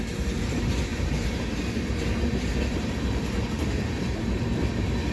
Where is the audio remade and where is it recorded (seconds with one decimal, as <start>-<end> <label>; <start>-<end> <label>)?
0.0-0.9 recorded; 0.9-4.0 remade; 4.0-5.1 recorded